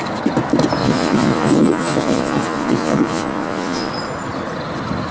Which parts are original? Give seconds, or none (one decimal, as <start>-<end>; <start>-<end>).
0.0-0.8; 3.9-5.1